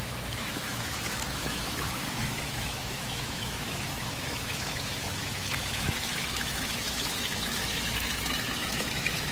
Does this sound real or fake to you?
fake